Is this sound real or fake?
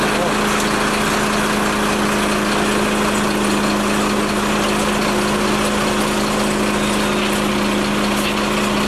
real